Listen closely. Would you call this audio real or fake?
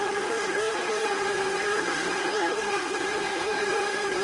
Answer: fake